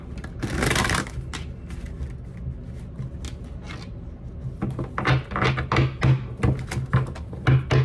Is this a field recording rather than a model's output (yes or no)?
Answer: yes